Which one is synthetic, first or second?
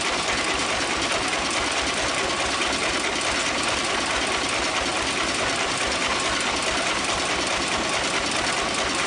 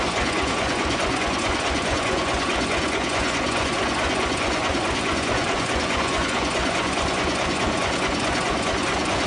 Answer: second